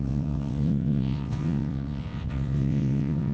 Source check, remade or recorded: remade